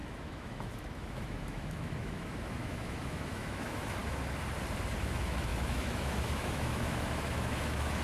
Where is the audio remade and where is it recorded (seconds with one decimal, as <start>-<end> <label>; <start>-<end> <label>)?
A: 0.0-4.0 remade; 4.0-5.1 recorded; 5.1-8.0 remade